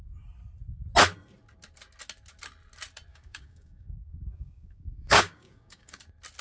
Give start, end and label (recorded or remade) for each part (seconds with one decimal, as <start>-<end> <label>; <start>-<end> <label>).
0.0-3.1 recorded; 3.1-6.0 remade; 6.0-6.4 recorded